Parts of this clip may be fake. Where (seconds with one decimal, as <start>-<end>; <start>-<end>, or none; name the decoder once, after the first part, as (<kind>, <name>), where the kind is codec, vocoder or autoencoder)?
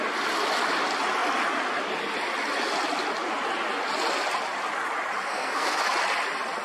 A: 5.3-5.8 (codec, SNAC)